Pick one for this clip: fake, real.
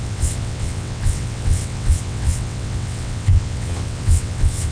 fake